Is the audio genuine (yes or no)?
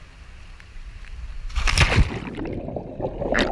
yes